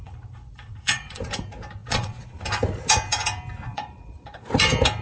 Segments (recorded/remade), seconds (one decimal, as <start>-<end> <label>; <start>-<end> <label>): 0.0-1.2 remade; 1.2-1.8 recorded; 1.8-2.4 remade; 2.4-3.7 recorded; 3.7-4.5 remade; 4.5-5.0 recorded